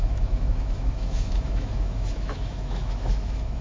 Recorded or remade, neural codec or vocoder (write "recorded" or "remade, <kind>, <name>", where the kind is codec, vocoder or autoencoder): remade, autoencoder, DAC-VAE